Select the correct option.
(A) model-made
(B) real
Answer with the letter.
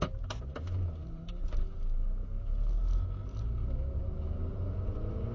B